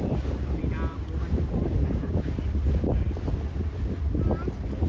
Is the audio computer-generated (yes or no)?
no